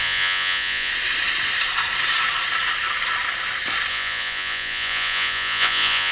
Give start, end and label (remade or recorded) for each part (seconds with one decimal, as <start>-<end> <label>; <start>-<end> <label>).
0.0-0.9 remade; 0.9-3.9 recorded; 3.9-6.1 remade